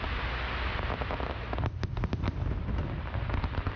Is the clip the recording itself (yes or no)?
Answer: yes